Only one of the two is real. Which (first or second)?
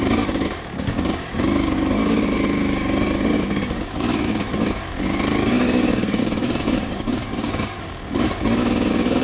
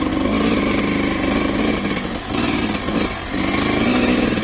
second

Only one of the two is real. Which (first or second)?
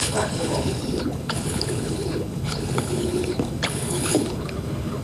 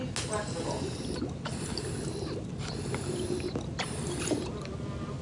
second